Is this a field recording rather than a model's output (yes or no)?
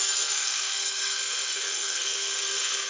no